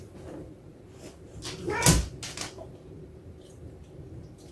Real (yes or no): yes